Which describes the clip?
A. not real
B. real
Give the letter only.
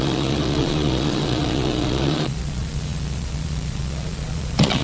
A